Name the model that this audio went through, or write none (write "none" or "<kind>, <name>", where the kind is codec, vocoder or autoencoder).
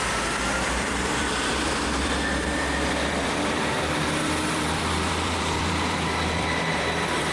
vocoder, BigVGAN v2